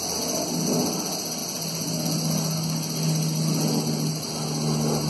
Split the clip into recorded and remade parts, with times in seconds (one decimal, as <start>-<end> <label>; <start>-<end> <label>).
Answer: 0.0-5.1 recorded